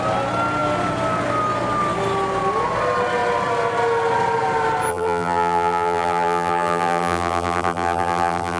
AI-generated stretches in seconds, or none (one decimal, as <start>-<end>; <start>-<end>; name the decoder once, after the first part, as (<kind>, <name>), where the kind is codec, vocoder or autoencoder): 4.9-8.6 (vocoder, BigVGAN v2)